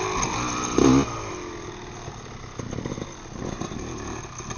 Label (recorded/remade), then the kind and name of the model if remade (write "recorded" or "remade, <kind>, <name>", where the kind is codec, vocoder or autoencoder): recorded